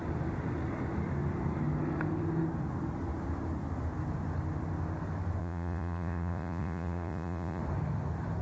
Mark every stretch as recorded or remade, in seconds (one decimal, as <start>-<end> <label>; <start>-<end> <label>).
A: 0.0-5.4 recorded; 5.4-7.6 remade; 7.6-8.4 recorded